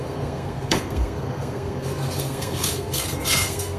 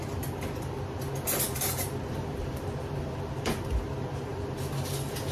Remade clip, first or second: first